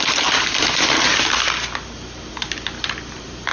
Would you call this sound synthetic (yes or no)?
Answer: no